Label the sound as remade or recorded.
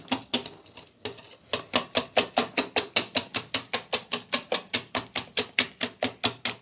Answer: recorded